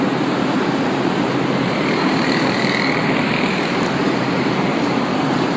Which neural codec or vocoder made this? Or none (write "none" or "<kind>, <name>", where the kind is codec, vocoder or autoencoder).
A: vocoder, BigVGAN v2